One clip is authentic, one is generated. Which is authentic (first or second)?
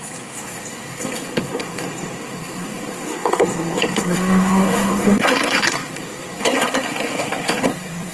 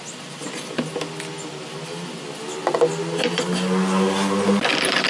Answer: second